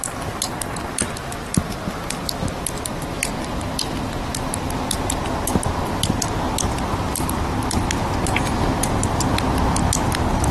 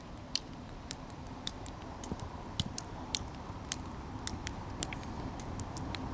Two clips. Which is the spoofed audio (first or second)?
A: second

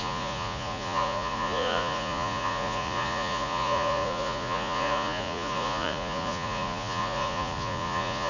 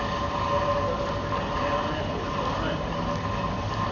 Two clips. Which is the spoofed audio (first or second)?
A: first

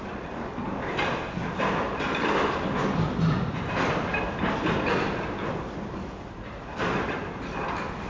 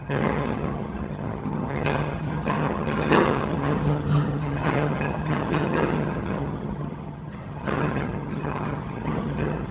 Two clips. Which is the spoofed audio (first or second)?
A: second